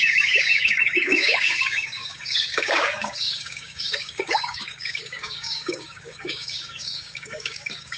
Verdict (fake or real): fake